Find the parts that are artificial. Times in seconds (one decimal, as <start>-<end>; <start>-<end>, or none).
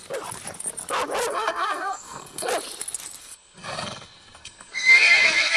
1.3-2.5; 3.2-5.6